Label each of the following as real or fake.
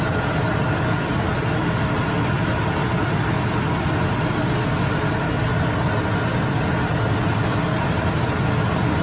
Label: real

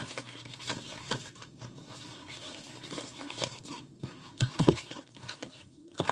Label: fake